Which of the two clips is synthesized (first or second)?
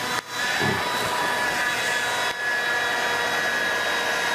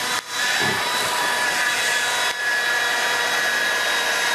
second